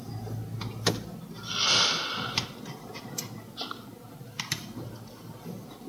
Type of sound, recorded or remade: recorded